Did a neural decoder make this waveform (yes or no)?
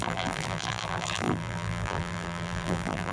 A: yes